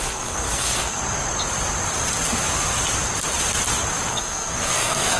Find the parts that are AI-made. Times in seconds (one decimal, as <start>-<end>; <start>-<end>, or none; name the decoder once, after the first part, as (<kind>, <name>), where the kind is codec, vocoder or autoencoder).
0.0-1.0 (codec, SNAC); 4.1-5.2